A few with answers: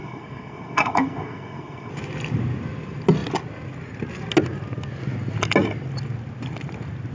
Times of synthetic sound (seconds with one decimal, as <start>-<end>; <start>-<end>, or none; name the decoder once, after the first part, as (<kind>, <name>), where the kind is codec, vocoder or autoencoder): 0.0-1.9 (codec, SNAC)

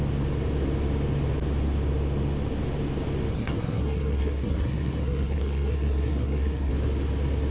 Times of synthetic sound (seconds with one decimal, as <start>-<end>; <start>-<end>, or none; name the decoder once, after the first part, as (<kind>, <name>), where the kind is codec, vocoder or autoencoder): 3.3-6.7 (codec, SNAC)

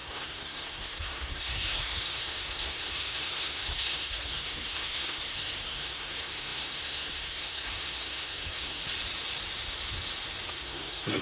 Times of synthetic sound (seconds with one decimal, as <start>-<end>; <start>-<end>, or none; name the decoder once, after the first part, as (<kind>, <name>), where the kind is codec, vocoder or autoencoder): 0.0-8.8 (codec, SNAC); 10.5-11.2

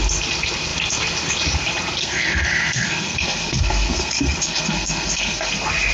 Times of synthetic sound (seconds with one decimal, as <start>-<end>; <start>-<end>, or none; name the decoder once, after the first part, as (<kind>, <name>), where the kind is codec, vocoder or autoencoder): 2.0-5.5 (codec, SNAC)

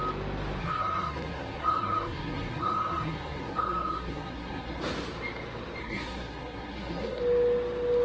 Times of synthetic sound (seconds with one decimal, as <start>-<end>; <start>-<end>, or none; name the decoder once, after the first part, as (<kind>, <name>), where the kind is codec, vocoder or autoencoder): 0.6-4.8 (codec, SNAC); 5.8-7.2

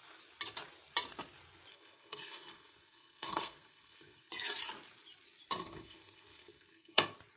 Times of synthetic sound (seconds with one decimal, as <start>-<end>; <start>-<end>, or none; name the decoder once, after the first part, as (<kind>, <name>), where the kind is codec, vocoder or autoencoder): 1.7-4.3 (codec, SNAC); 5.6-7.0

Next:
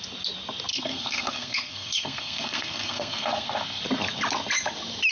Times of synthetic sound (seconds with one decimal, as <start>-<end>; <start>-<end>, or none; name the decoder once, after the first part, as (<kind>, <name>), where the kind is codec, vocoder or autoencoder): 0.7-3.8 (codec, SNAC)